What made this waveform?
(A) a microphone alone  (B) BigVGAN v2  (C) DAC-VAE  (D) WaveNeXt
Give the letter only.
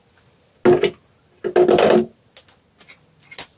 A